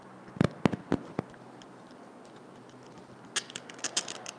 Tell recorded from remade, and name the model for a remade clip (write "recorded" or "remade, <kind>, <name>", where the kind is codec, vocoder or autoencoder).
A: recorded